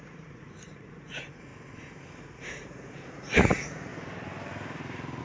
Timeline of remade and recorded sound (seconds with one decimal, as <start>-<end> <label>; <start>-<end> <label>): 0.0-1.5 remade; 1.5-2.2 recorded; 2.2-3.9 remade; 3.9-5.2 recorded